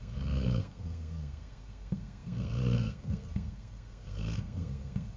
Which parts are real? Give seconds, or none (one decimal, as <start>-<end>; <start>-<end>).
none